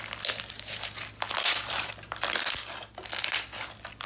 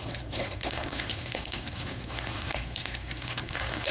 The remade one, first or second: second